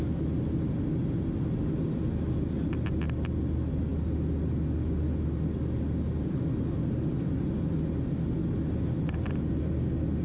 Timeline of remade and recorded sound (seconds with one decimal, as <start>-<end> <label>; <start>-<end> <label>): 0.0-10.2 recorded